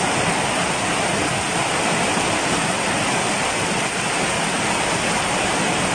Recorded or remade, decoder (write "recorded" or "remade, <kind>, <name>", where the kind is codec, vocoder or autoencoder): recorded